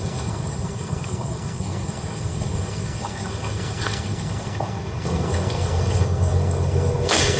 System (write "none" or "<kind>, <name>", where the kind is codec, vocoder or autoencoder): codec, SNAC